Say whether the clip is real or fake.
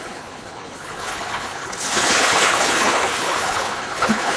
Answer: fake